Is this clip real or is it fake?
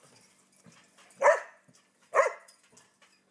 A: real